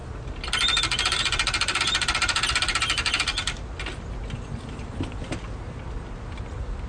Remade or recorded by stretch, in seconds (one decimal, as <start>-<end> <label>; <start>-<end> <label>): 0.0-6.9 recorded